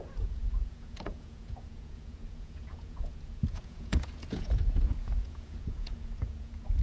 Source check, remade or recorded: remade